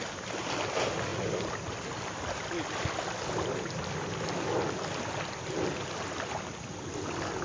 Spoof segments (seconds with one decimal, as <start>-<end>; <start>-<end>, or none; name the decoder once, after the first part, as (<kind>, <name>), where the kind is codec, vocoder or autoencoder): none